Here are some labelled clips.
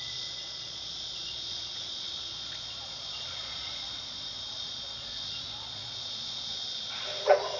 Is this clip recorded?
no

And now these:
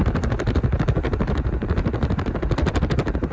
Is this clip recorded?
yes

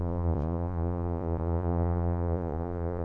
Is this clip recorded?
no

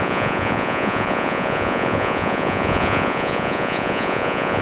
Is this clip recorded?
no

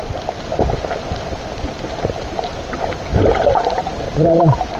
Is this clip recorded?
yes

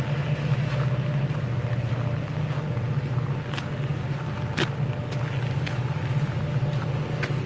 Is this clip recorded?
yes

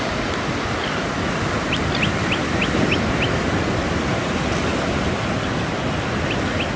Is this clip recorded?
yes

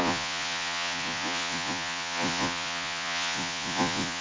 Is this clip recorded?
no